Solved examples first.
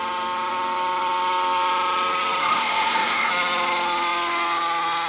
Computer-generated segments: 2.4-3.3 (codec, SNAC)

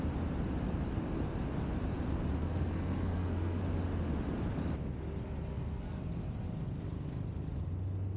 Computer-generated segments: 2.4-3.6 (codec, SNAC); 5.5-6.0

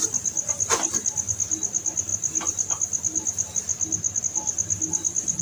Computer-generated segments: none

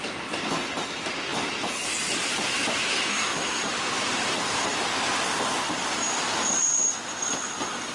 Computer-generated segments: 3.1-3.7 (codec, SNAC)

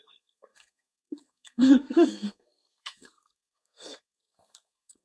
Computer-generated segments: 0.0-5.0 (codec, SNAC)

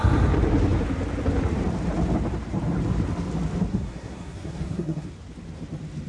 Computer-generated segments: 3.7-5.1 (codec, SNAC)